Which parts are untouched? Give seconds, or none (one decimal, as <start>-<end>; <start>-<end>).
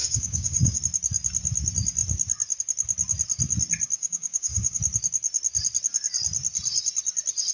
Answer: 0.8-4.0; 4.8-7.5